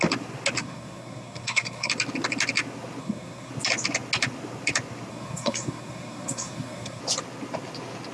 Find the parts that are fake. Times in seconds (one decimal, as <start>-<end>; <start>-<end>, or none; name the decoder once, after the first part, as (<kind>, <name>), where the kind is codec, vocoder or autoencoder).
0.6-1.9 (codec, SNAC); 3.0-3.5; 5.1-7.0